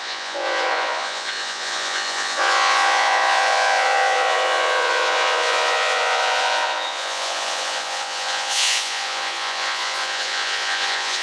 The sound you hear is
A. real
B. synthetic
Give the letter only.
B